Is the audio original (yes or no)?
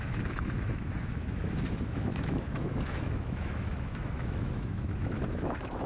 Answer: no